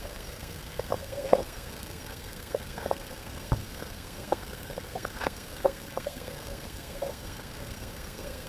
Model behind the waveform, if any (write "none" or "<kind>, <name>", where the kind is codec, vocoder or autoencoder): codec, SNAC